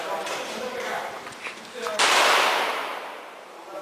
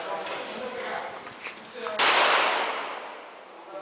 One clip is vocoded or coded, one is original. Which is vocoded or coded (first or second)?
first